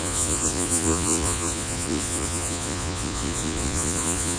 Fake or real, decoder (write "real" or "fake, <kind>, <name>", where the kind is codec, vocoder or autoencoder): fake, vocoder, Vocos